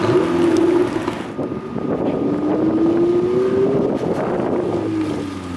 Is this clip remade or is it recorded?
recorded